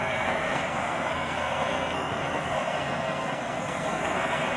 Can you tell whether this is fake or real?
fake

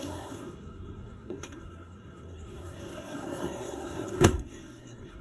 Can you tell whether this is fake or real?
fake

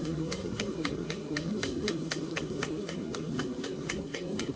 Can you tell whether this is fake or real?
fake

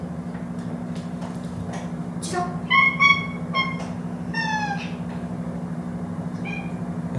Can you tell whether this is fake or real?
real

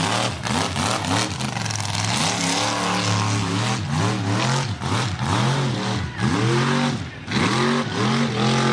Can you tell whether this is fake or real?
real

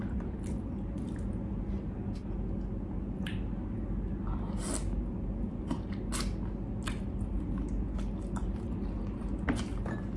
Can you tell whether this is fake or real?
real